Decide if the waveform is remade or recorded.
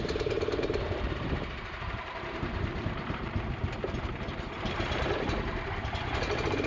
remade